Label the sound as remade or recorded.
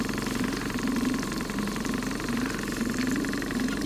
recorded